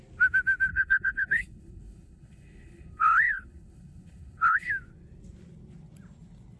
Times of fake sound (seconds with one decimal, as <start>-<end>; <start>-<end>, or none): 0.7-4.7